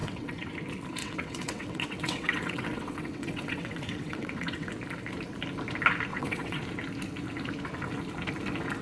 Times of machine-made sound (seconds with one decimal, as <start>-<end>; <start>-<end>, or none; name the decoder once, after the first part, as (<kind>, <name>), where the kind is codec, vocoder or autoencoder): 0.0-0.5 (vocoder, WaveNeXt); 1.0-4.7; 6.1-6.6